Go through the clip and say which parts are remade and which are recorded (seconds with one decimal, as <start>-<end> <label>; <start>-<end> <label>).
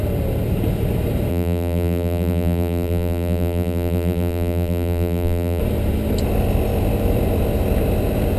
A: 0.0-1.3 recorded; 1.3-5.6 remade; 5.6-8.4 recorded